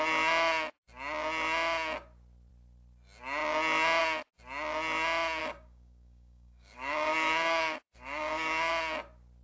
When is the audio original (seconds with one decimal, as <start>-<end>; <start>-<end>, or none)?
0.0-5.4; 8.7-9.4